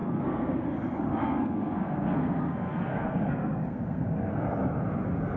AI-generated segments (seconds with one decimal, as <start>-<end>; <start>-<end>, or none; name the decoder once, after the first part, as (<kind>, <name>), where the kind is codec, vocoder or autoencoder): 0.0-0.6 (codec, SNAC); 1.1-4.3